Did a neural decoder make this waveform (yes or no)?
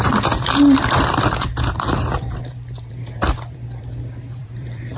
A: yes